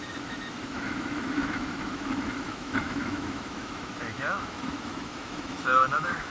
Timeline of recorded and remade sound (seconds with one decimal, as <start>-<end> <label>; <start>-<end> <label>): 0.0-6.3 remade